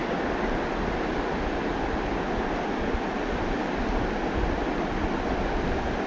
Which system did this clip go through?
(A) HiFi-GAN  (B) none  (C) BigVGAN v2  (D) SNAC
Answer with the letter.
B